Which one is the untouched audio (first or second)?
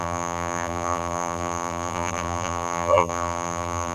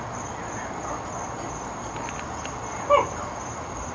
second